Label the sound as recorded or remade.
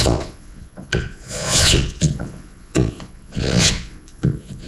remade